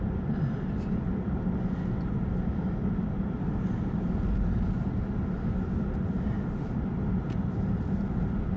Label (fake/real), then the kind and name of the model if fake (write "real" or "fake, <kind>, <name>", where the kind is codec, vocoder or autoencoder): real